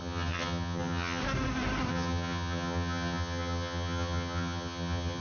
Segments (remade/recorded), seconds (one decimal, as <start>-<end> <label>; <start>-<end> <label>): 0.0-1.2 remade; 1.2-1.9 recorded; 1.9-5.2 remade